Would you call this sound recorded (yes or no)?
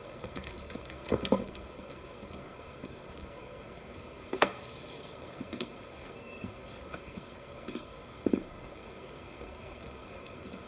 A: no